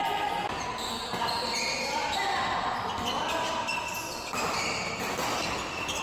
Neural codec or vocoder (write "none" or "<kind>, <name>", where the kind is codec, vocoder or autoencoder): none